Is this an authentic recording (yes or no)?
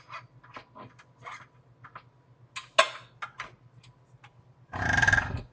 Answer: yes